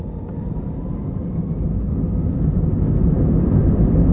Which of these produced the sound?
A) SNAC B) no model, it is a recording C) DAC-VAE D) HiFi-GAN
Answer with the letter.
B